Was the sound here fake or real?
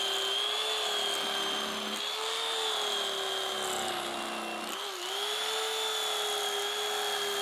real